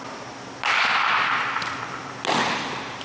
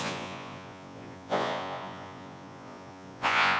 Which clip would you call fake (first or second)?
second